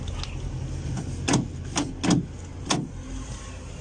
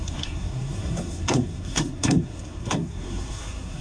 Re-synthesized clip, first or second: second